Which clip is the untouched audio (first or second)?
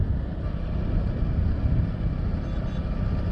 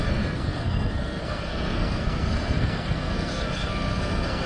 first